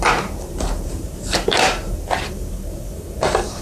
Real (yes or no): no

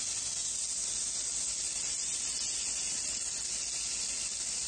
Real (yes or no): yes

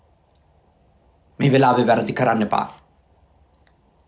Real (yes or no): yes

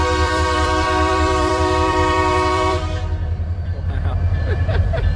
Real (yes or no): no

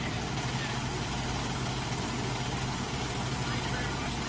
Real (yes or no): no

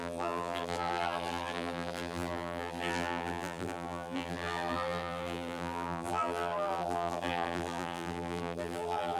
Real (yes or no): no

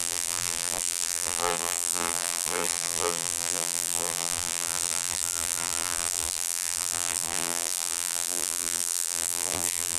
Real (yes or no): no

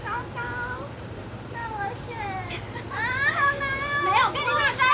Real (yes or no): no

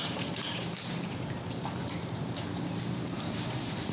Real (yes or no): no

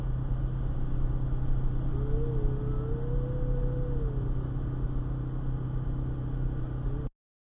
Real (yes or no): yes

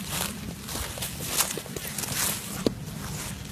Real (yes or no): yes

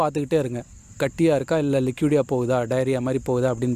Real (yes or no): yes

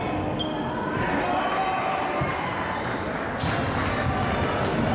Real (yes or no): yes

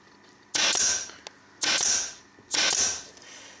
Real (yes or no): yes